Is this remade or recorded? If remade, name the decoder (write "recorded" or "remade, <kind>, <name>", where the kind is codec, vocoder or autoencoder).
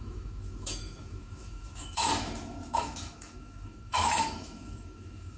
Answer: remade, autoencoder, DAC-VAE